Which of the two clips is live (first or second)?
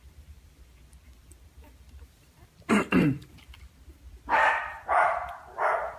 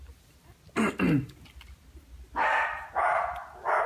second